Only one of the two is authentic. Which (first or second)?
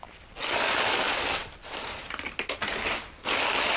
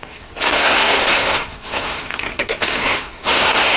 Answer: first